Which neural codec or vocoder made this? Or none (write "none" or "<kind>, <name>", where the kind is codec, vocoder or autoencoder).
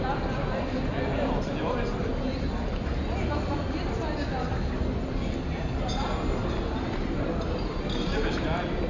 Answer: none